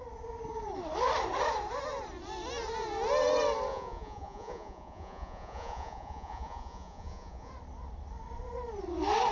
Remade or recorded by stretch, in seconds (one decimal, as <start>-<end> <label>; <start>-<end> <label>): 0.0-3.7 recorded; 3.7-7.5 remade; 7.5-9.3 recorded